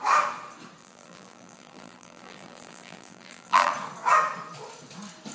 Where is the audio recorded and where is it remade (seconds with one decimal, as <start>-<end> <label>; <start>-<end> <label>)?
0.0-0.8 recorded; 0.8-3.7 remade; 3.7-5.3 recorded